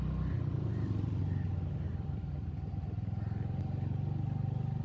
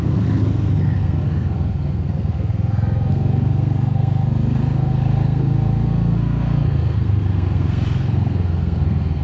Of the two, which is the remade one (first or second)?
second